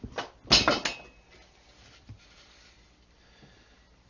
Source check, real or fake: real